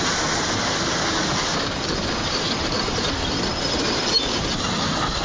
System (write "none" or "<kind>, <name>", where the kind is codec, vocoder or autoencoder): none